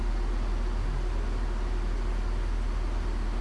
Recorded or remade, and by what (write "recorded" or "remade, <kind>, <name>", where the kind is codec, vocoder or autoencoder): recorded